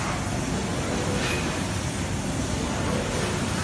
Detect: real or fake real